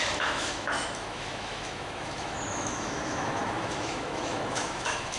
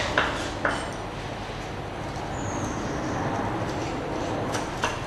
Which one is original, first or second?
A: second